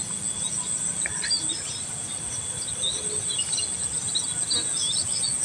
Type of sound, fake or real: real